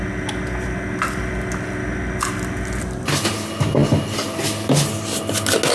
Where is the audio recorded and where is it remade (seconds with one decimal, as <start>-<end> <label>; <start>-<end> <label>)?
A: 0.0-5.7 recorded